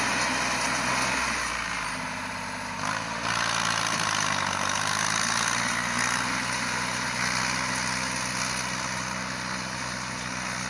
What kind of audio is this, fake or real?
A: real